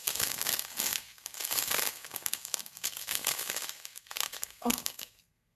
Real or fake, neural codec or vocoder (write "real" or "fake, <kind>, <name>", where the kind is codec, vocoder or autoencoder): fake, codec, SNAC